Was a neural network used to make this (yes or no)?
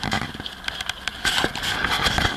no